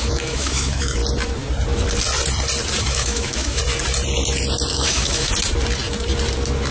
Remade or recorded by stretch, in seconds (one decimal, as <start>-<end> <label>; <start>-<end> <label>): 0.0-1.0 remade; 1.0-2.8 recorded; 2.8-3.6 remade; 3.6-4.7 recorded; 4.7-5.3 remade; 5.3-6.7 recorded